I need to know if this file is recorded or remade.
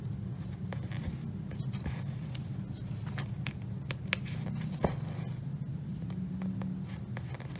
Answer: recorded